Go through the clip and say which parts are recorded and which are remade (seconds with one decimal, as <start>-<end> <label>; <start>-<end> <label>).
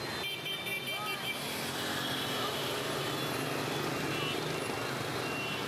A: 0.0-5.7 recorded